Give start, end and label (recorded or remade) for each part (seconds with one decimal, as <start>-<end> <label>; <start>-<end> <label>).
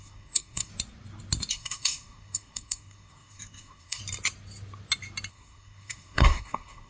0.0-0.7 remade; 0.7-1.5 recorded; 1.5-4.0 remade; 4.0-5.3 recorded; 5.3-6.9 remade